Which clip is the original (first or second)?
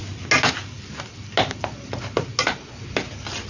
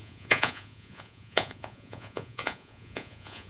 first